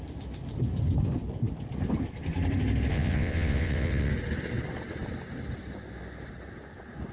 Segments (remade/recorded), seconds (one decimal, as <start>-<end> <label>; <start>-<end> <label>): 0.0-2.9 recorded; 2.9-4.1 remade; 4.1-7.1 recorded